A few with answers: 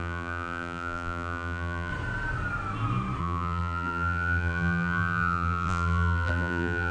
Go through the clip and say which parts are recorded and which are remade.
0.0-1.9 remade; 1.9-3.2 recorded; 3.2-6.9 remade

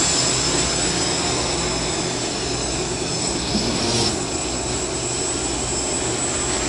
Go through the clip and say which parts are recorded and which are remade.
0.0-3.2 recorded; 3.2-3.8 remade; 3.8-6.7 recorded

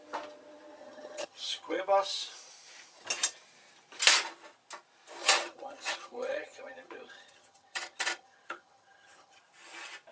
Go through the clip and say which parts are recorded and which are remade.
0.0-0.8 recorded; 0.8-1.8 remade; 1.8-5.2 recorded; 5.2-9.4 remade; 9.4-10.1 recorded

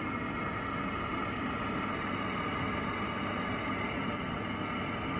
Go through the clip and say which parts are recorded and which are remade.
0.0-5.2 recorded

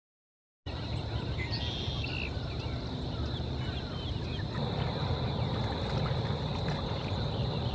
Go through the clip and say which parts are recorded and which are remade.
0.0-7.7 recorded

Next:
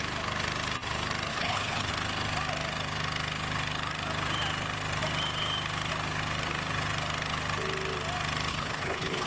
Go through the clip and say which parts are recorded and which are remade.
0.0-1.3 recorded; 1.3-1.9 remade; 1.9-8.5 recorded; 8.5-9.3 remade

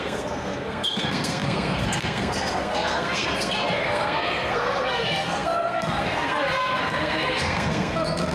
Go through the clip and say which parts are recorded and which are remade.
0.0-8.3 remade

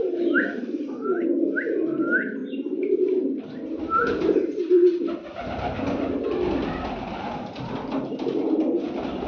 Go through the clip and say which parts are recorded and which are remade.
0.0-9.3 recorded